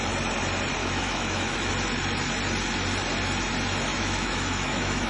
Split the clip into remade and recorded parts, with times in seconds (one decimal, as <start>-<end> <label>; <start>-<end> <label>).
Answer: 0.0-0.8 recorded; 0.8-1.7 remade; 1.7-3.9 recorded; 3.9-5.1 remade

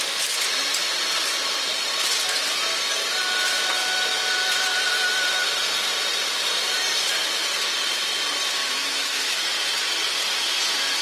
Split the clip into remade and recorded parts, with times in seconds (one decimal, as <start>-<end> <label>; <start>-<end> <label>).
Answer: 0.0-8.6 recorded; 8.6-9.6 remade; 9.6-11.0 recorded

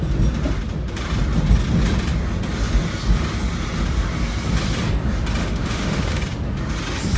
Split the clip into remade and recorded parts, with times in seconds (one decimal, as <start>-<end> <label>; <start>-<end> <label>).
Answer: 0.0-5.4 recorded; 5.4-6.2 remade; 6.2-7.2 recorded

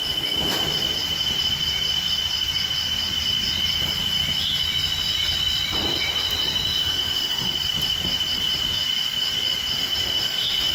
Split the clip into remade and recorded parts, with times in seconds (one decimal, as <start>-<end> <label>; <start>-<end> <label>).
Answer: 0.0-6.6 recorded; 6.6-7.6 remade; 7.6-9.8 recorded; 9.8-10.7 remade

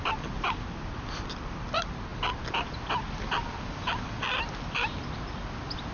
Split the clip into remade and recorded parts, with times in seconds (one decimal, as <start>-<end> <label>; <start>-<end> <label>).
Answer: 0.0-5.9 recorded

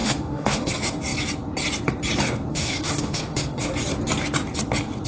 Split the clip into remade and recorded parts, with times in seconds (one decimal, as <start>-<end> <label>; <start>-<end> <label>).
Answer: 0.0-0.7 remade; 0.7-2.5 recorded; 2.5-3.7 remade; 3.7-5.1 recorded